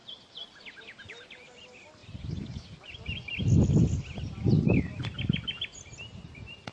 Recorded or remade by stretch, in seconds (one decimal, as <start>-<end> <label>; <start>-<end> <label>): 0.0-6.7 recorded